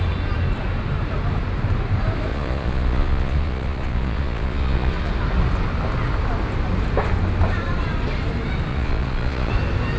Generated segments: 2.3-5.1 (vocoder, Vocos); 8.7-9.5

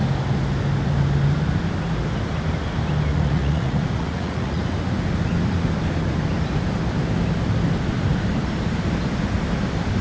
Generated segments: 3.1-4.6 (vocoder, Vocos)

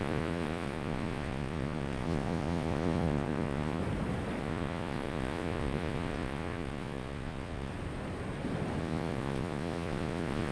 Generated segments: 0.0-3.8 (vocoder, Vocos); 4.4-7.7; 8.8-10.5